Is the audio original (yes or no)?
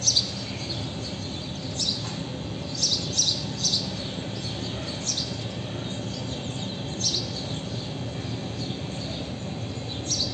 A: yes